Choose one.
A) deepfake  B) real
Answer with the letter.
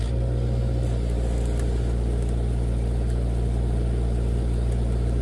B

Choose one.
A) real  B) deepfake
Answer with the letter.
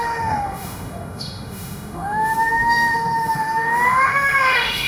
B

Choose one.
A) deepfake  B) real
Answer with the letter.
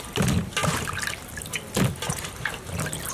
B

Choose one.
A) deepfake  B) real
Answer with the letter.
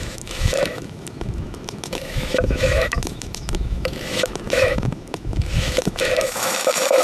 A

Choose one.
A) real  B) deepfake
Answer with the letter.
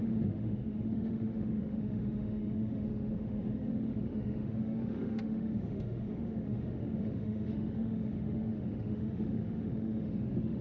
B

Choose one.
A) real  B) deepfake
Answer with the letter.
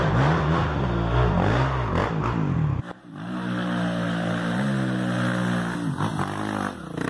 A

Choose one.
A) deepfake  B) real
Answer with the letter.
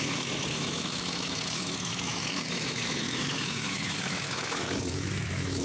A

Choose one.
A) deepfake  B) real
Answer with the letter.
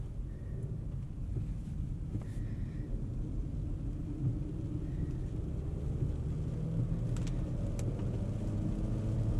B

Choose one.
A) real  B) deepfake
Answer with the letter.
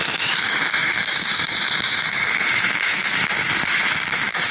B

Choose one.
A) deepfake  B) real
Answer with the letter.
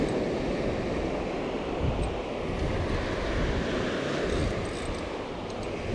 B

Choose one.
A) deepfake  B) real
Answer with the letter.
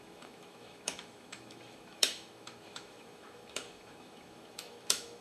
A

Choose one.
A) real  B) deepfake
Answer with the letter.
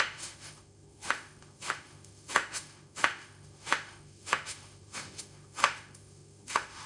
B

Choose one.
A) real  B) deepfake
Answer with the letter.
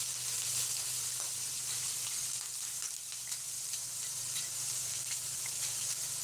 A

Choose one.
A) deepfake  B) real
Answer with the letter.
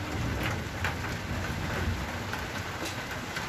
B